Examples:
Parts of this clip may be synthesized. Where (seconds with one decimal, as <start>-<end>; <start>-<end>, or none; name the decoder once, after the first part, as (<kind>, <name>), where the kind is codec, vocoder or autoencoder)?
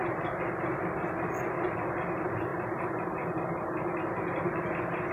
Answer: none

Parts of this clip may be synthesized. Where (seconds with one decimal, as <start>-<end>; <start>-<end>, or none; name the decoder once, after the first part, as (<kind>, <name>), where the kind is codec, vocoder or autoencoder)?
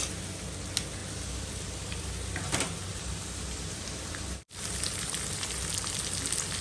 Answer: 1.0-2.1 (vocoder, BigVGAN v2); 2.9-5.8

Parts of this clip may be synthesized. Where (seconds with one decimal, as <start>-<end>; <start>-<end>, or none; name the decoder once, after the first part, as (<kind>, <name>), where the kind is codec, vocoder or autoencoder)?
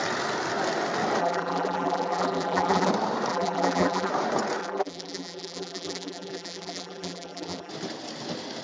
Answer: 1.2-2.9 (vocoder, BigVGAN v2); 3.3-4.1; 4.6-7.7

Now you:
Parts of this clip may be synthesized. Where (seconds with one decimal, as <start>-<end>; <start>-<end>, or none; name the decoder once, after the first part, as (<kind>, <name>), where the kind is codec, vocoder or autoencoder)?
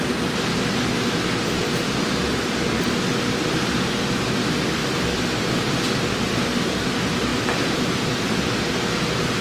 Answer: 4.8-5.7 (vocoder, BigVGAN v2); 7.3-8.3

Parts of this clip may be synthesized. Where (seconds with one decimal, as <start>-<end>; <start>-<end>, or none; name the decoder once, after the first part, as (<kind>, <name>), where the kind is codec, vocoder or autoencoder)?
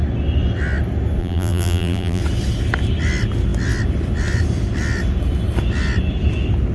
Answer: 1.2-2.2 (vocoder, BigVGAN v2)